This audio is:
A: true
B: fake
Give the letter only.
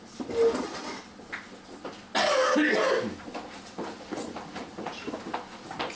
A